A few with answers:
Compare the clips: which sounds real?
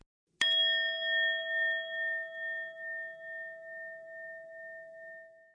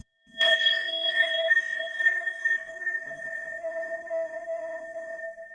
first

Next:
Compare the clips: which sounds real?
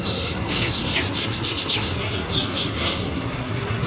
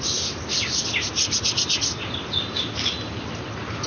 second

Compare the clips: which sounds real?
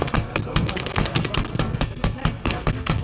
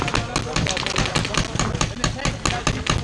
second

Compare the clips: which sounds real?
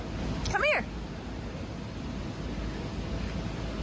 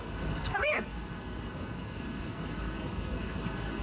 first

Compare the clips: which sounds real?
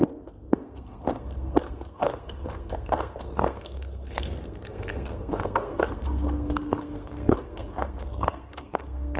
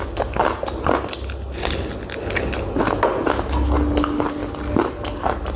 second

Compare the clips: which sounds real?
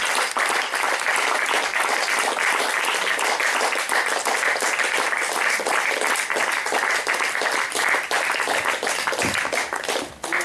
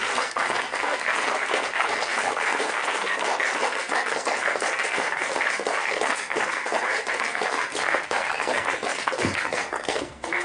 first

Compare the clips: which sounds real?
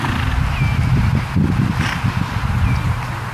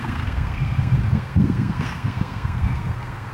first